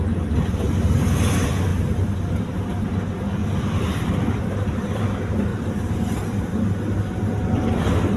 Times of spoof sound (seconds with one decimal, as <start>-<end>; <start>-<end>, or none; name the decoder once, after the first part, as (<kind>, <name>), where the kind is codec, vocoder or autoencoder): 1.7-2.4 (vocoder, BigVGAN v2); 3.4-5.0